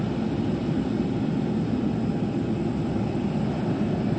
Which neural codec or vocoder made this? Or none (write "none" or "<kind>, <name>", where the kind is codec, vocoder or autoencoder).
none